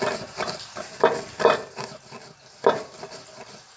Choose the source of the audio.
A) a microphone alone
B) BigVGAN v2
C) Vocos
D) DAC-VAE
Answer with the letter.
A